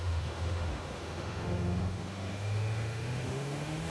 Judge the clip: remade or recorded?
remade